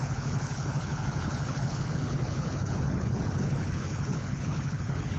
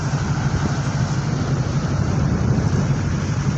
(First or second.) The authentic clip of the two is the second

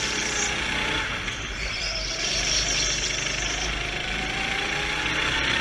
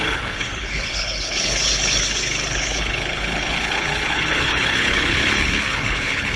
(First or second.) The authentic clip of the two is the first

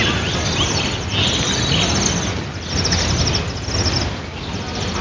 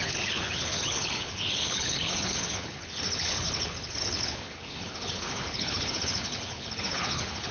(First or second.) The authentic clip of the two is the first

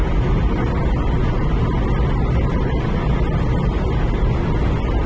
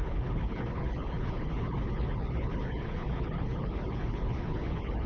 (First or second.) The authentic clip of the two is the first